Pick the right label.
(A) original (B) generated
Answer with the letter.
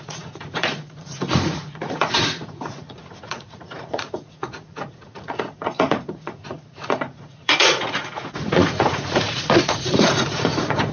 B